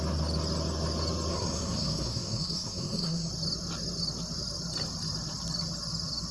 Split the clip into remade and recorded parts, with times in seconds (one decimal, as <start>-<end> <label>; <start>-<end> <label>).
0.0-1.3 recorded; 1.3-3.3 remade; 3.3-6.3 recorded